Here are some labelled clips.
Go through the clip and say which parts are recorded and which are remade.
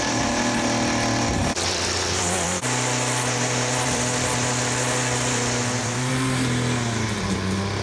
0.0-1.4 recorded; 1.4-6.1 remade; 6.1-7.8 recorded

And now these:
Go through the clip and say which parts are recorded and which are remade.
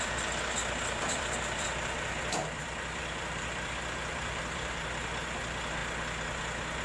0.0-0.6 recorded; 0.6-4.7 remade; 4.7-6.8 recorded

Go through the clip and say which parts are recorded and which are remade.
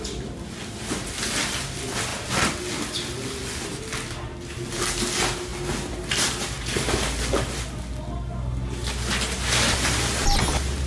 0.0-10.9 recorded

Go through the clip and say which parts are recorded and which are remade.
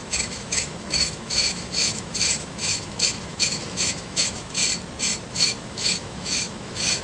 0.0-4.6 remade; 4.6-5.3 recorded; 5.3-7.0 remade